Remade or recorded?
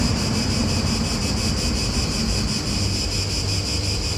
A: recorded